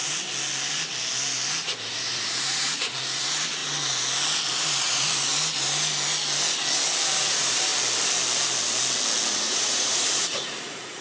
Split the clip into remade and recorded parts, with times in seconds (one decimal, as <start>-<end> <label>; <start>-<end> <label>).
0.0-1.9 recorded; 1.9-3.6 remade; 3.6-4.6 recorded; 4.6-5.3 remade; 5.3-7.2 recorded; 7.2-7.7 remade; 7.7-9.3 recorded; 9.3-11.0 remade

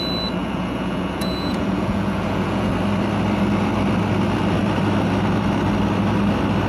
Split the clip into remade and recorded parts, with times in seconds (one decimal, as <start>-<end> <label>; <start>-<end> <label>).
0.0-0.4 recorded; 0.4-2.7 remade; 2.7-6.7 recorded